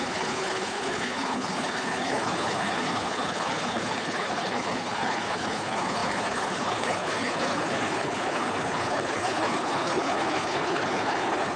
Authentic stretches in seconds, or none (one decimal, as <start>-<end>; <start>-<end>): none